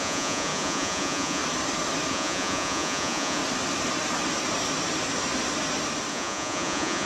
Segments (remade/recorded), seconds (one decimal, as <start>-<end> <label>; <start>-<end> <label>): 0.0-1.4 remade; 1.4-2.1 recorded; 2.1-3.4 remade; 3.4-6.1 recorded; 6.1-7.1 remade